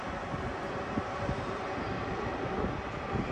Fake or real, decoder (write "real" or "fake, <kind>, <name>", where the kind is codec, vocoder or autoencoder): real